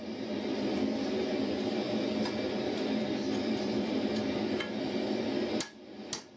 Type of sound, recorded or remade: recorded